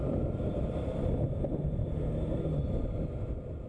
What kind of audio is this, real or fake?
real